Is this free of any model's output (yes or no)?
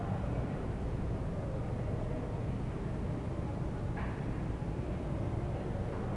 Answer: yes